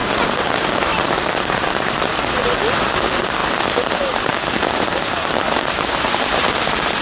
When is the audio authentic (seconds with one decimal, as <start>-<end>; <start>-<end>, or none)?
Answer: 2.1-3.4; 6.5-7.0